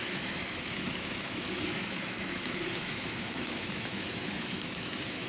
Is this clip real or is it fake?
fake